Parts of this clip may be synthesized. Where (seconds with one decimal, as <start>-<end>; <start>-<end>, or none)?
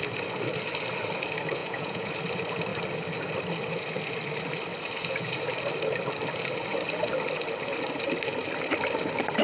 1.6-2.1